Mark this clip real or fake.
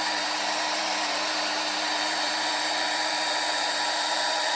fake